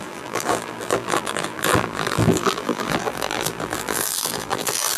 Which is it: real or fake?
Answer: fake